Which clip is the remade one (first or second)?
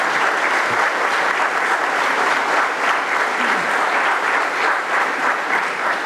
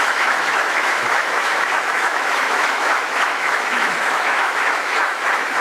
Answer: second